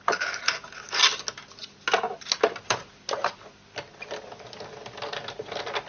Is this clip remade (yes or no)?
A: no